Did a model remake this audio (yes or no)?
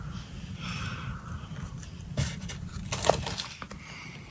yes